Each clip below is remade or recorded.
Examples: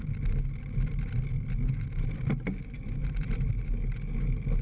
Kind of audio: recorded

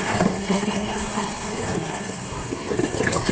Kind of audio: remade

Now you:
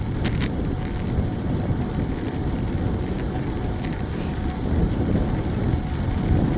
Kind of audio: recorded